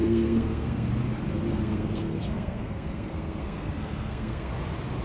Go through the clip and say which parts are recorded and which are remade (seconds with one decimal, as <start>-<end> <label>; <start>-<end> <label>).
0.0-0.9 remade; 0.9-1.5 recorded; 1.5-4.5 remade; 4.5-5.0 recorded